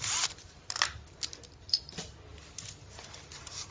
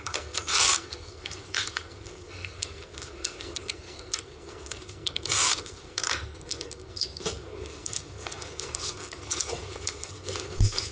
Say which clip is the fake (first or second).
second